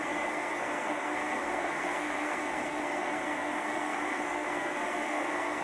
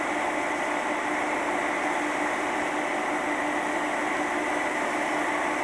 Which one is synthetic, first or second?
first